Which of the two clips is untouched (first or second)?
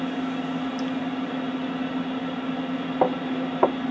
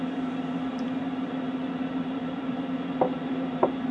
first